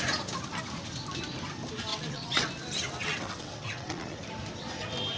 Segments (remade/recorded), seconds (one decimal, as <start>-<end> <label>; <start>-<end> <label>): 0.0-1.9 recorded; 1.9-2.5 remade; 2.5-3.0 recorded; 3.0-4.2 remade; 4.2-5.2 recorded